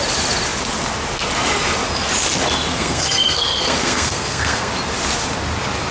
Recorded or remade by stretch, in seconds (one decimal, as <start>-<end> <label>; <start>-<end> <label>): 0.0-2.7 recorded; 2.7-4.7 remade; 4.7-5.9 recorded